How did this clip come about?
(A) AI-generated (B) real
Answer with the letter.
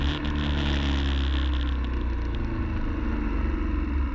B